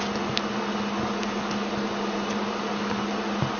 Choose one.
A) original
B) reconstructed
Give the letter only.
A